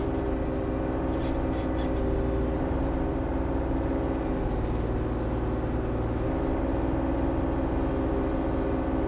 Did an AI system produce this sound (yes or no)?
no